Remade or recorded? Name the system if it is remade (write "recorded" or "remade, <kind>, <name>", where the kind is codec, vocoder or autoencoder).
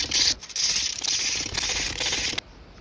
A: recorded